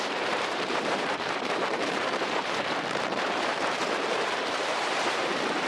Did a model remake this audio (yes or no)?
yes